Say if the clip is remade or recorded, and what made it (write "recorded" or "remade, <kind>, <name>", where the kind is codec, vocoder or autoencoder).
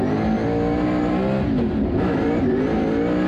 recorded